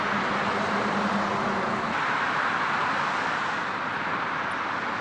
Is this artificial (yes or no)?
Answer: no